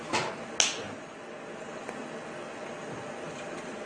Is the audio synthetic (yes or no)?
no